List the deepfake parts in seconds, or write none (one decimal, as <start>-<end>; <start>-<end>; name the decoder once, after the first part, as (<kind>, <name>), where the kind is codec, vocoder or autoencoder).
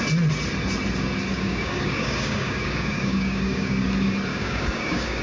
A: 1.3-3.8 (codec, DAC); 4.3-5.2